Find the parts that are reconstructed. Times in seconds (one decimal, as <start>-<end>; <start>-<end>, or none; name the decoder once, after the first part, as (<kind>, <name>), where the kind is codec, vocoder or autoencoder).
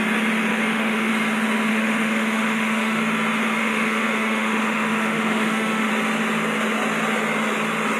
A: 0.5-1.1 (autoencoder, DAC-VAE); 1.7-3.0; 3.6-5.9